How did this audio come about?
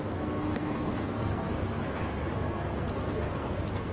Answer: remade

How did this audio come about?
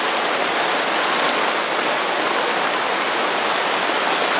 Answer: recorded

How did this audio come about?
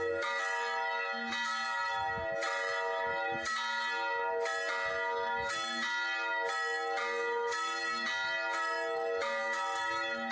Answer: recorded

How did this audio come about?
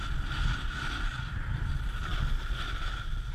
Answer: recorded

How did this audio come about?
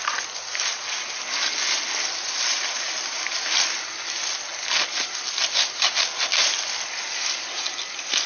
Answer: recorded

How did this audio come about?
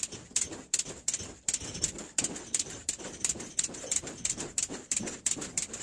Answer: remade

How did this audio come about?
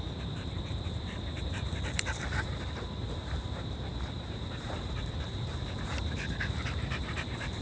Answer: remade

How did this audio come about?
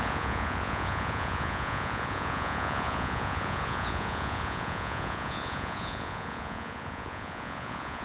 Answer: remade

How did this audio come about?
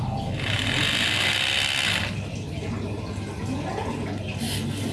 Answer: recorded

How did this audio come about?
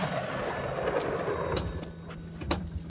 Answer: recorded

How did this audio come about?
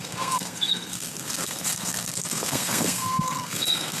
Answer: remade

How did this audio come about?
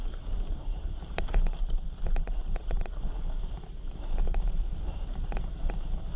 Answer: remade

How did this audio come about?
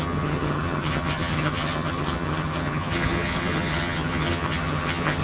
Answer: remade